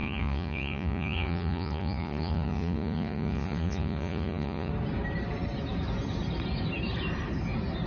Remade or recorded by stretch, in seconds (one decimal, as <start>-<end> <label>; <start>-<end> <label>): 0.0-4.7 remade; 4.7-7.9 recorded